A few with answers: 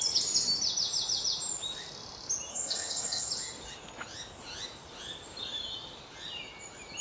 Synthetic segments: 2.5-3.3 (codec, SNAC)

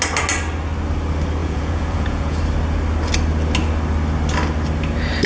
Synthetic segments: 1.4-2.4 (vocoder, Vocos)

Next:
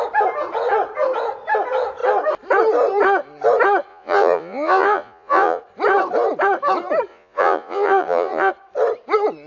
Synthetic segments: 3.9-5.6 (vocoder, Vocos); 7.1-8.5